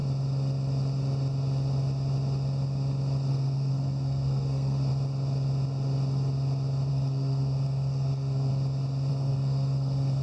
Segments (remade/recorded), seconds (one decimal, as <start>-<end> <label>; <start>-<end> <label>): 0.0-3.3 recorded; 3.3-4.9 remade; 4.9-6.9 recorded; 6.9-8.5 remade; 8.5-9.1 recorded; 9.1-10.2 remade